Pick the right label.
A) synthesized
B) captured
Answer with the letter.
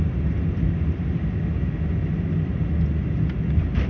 B